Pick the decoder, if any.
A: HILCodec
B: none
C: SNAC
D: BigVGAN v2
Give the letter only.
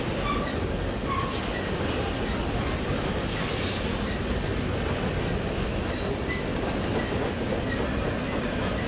B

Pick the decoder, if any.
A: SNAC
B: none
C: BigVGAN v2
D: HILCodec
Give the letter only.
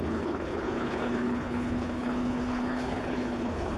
D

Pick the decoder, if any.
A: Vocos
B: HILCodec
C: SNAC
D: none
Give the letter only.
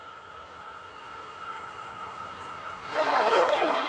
C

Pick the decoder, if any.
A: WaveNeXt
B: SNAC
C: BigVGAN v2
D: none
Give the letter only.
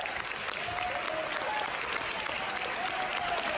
D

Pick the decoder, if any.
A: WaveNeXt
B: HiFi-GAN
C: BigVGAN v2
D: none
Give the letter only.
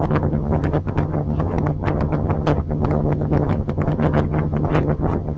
B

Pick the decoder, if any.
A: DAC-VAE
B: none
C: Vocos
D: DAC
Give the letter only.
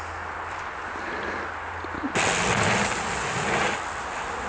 B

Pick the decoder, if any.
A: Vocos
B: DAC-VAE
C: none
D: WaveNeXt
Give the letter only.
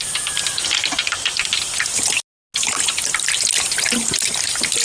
C